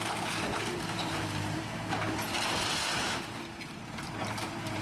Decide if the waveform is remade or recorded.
remade